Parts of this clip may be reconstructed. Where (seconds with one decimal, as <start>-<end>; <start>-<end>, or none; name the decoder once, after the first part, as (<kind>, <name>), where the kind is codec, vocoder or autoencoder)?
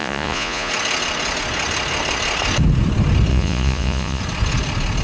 0.0-0.7 (vocoder, Vocos); 3.3-4.2